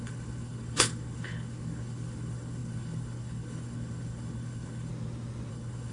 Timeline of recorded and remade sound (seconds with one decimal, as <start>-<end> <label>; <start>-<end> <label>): 0.0-4.9 remade; 4.9-5.5 recorded; 5.5-5.9 remade